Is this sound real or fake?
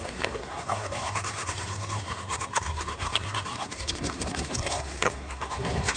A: fake